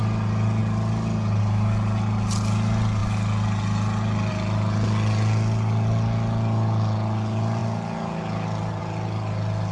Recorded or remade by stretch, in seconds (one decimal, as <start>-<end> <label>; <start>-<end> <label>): 0.0-9.7 recorded